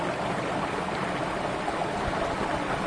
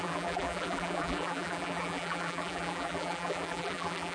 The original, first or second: first